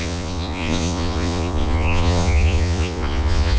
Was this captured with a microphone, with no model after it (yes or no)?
no